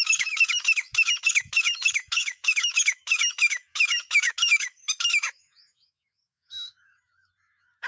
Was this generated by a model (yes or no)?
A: yes